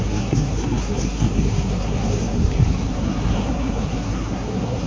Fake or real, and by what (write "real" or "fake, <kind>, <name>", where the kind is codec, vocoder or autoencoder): fake, codec, SNAC